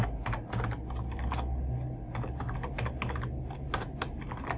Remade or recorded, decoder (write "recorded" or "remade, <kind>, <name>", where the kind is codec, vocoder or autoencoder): recorded